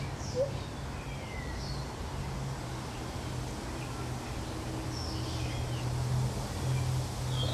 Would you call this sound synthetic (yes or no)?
no